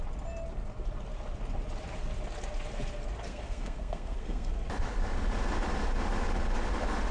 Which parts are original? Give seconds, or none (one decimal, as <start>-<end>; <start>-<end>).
0.0-3.3; 4.5-7.1